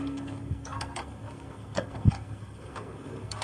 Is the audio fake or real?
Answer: fake